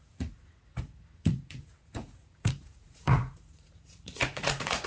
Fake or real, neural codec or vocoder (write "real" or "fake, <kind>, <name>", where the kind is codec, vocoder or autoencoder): fake, vocoder, Vocos